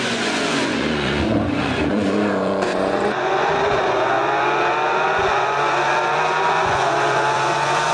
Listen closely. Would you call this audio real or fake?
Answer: fake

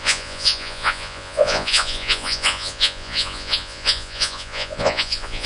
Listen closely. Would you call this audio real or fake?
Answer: fake